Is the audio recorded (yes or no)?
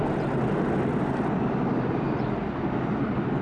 yes